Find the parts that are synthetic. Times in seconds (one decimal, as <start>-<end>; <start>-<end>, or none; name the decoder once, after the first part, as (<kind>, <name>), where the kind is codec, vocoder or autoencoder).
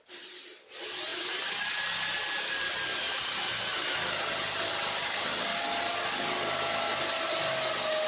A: 1.1-3.6 (vocoder, BigVGAN v2)